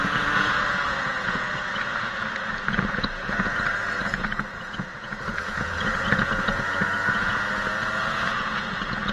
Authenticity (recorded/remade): remade